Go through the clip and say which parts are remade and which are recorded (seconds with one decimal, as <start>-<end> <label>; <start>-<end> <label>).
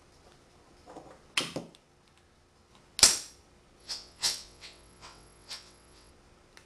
0.0-3.8 recorded; 3.8-6.1 remade; 6.1-6.7 recorded